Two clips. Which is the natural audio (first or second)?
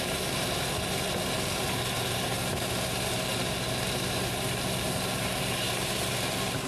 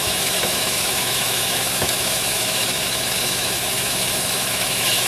first